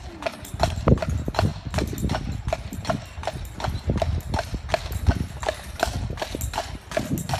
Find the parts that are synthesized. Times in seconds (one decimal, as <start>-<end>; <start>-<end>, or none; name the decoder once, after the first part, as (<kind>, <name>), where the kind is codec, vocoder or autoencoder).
none